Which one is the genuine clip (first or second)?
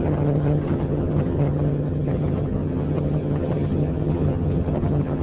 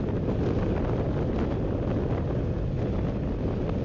second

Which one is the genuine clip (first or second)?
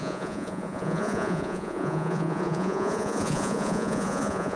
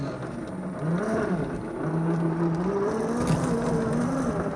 second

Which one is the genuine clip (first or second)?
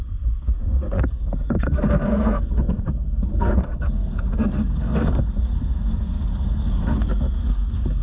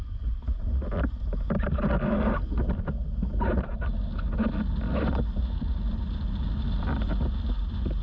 second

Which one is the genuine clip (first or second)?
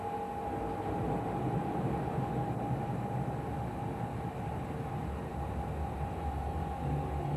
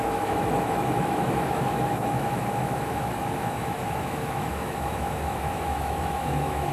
first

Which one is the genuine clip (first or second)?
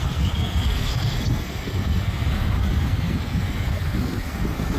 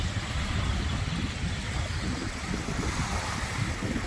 second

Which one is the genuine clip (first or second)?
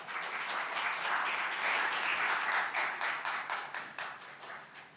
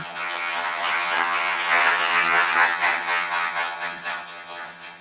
first